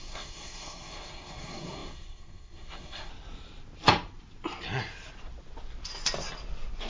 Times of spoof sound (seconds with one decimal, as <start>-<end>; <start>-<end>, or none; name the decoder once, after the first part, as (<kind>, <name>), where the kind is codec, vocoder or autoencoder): 0.0-3.1 (codec, SNAC)